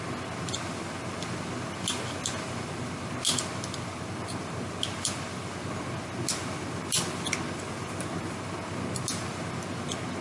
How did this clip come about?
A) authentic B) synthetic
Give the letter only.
A